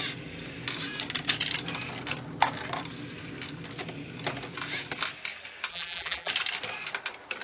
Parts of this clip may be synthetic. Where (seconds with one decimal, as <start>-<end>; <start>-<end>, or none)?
5.7-6.3